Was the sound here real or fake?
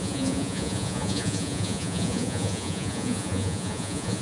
fake